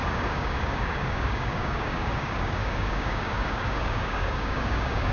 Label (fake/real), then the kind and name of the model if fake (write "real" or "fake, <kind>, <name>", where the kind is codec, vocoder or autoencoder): fake, codec, DAC